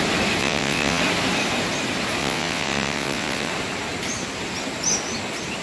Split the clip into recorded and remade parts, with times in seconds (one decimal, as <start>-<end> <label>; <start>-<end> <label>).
0.0-0.4 recorded; 0.4-1.0 remade; 1.0-2.2 recorded; 2.2-3.5 remade; 3.5-5.6 recorded